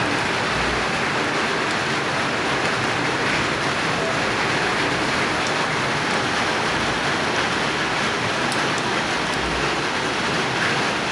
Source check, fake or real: real